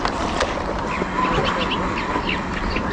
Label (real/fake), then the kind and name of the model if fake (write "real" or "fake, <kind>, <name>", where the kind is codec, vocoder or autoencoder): real